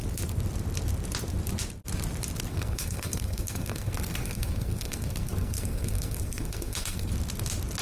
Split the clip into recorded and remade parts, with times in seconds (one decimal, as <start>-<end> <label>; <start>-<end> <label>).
0.0-2.5 recorded; 2.5-7.1 remade; 7.1-7.8 recorded